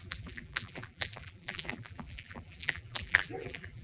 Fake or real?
fake